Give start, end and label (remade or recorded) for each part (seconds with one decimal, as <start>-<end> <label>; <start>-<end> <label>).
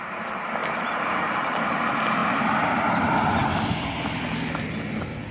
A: 0.0-0.6 recorded; 0.6-1.6 remade; 1.6-2.2 recorded; 2.2-2.7 remade; 2.7-5.3 recorded